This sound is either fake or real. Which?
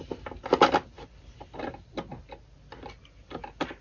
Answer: real